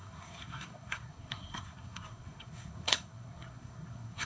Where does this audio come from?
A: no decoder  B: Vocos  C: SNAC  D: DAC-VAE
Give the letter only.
C